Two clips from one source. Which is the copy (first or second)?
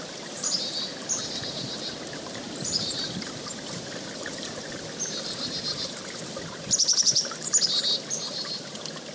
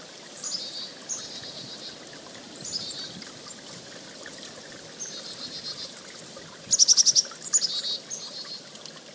first